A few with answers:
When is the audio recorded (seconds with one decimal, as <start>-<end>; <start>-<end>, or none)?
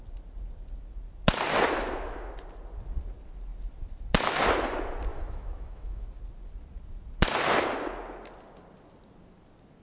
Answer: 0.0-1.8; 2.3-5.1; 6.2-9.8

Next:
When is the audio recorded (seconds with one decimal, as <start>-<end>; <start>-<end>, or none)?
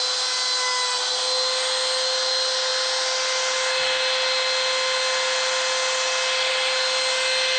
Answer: 0.0-7.6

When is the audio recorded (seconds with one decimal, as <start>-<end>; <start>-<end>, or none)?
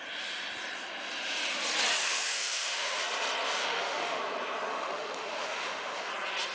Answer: 0.0-2.0; 3.0-3.6; 4.2-4.7; 6.1-6.5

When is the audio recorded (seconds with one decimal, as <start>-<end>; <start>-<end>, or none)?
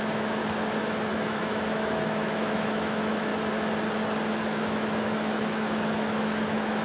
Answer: 0.4-1.1; 3.3-4.4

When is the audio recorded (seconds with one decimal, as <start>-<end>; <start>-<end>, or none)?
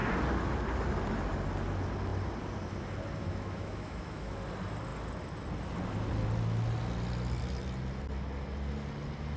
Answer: 0.0-3.2; 4.4-9.4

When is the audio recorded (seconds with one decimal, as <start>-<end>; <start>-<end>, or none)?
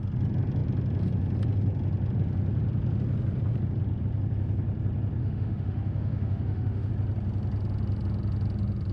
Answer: 0.0-5.2; 6.9-8.9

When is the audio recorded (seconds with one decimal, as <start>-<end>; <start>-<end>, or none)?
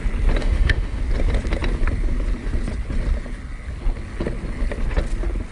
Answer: 0.0-0.4; 1.0-5.5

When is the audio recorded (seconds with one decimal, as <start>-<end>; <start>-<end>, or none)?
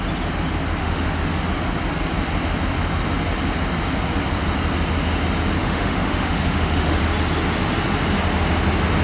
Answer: 0.0-0.8; 1.4-5.6; 7.0-9.0